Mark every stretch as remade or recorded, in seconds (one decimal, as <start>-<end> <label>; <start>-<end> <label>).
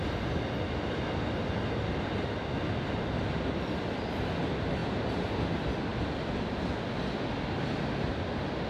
0.0-8.7 recorded